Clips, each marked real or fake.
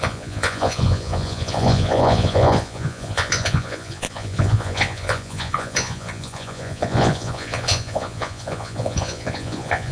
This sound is fake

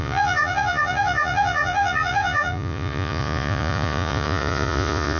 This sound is fake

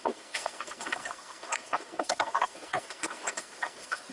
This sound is fake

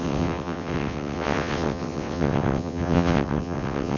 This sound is fake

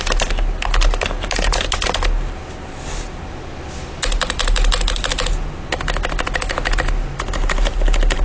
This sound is real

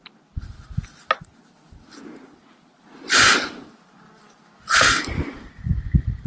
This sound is real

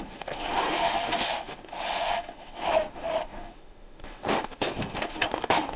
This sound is fake